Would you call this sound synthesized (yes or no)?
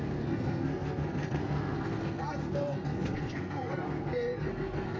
yes